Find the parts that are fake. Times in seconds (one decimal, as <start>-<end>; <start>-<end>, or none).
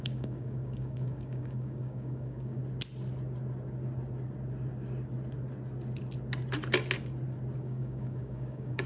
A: 0.0-2.6; 7.6-8.9